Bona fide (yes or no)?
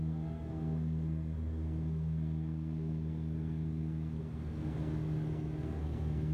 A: no